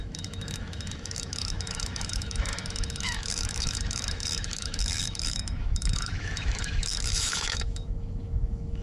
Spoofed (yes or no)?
yes